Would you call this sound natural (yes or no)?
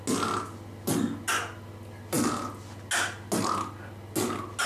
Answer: yes